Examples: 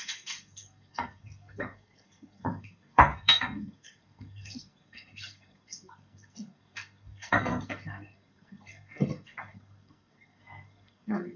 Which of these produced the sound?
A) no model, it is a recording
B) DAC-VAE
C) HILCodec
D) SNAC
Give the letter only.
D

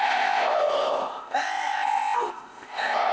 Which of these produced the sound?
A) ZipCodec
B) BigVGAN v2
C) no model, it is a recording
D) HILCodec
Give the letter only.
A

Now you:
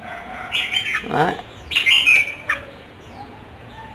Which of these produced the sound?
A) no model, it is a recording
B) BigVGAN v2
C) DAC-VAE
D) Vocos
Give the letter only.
D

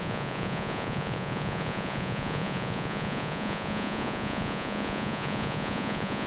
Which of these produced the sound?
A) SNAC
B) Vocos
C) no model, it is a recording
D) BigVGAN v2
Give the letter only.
B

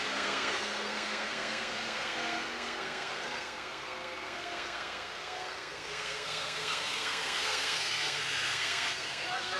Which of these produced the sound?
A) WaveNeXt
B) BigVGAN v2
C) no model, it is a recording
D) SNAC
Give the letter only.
D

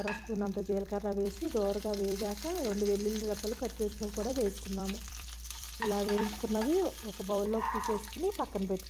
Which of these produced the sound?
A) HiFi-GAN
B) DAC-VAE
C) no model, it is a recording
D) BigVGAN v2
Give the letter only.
D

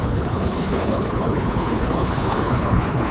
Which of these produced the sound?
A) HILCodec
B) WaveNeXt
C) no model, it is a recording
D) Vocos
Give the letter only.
A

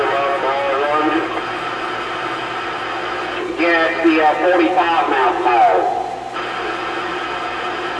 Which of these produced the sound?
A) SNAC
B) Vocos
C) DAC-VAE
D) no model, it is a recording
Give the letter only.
D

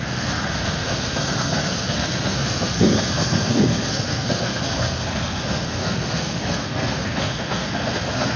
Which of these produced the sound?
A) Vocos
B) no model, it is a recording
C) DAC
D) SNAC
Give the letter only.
D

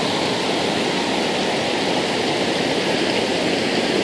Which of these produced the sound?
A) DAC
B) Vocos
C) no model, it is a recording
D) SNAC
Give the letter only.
C